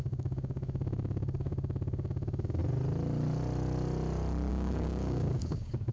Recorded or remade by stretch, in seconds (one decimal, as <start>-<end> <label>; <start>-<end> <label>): 0.0-2.6 remade; 2.6-4.5 recorded; 4.5-5.9 remade

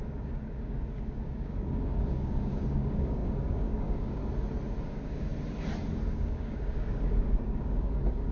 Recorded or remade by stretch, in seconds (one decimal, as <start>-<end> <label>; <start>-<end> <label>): 0.0-4.2 remade; 4.2-4.8 recorded; 4.8-5.3 remade; 5.3-6.1 recorded; 6.1-8.3 remade

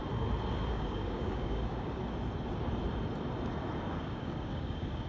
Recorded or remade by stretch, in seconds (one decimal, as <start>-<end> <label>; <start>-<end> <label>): 0.0-0.7 recorded; 0.7-2.0 remade; 2.0-3.9 recorded; 3.9-5.1 remade

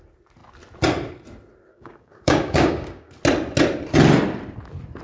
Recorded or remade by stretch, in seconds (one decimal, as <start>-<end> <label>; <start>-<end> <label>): 0.0-1.7 recorded; 1.7-3.1 remade; 3.1-5.0 recorded